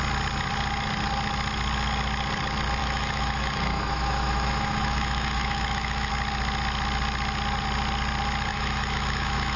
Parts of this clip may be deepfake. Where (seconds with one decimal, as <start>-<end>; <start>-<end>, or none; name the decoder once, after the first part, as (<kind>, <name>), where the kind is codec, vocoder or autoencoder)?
2.8-6.1 (autoencoder, DAC-VAE); 8.5-9.6